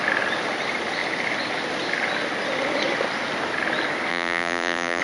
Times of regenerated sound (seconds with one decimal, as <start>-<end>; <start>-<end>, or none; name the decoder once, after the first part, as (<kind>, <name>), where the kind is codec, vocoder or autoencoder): 4.1-5.0 (vocoder, BigVGAN v2)